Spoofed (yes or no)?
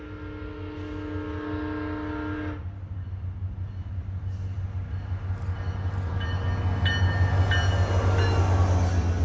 no